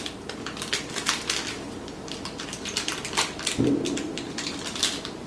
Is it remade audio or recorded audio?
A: remade